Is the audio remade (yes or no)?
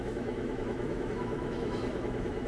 yes